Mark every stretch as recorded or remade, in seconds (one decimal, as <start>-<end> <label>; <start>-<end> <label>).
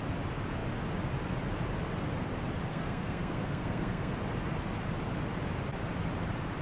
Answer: 0.0-2.7 recorded; 2.7-4.1 remade; 4.1-6.6 recorded